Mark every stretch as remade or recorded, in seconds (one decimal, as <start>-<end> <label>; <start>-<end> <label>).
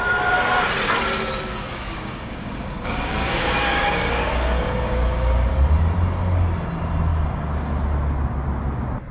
0.0-1.7 recorded; 1.7-5.5 remade; 5.5-9.1 recorded